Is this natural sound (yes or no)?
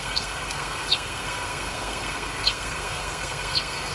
no